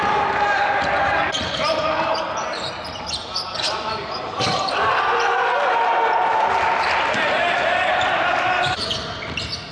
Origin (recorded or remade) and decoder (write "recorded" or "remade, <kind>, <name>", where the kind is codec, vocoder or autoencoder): recorded